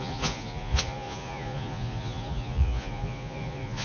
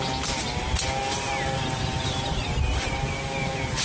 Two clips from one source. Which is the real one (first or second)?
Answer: second